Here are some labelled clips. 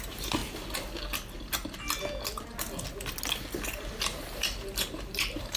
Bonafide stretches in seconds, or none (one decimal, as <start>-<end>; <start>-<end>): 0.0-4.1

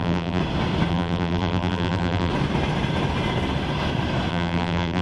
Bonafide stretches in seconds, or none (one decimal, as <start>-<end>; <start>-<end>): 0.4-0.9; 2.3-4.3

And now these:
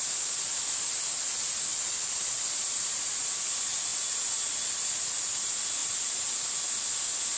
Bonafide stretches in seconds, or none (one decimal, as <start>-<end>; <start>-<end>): 0.0-1.7; 2.8-3.9; 5.1-5.8; 6.7-7.4

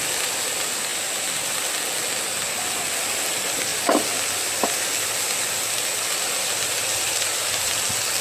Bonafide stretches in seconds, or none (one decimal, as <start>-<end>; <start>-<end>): 0.0-6.9; 7.7-8.2